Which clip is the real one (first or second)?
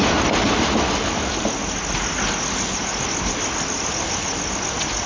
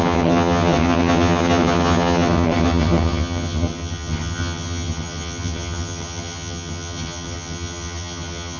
first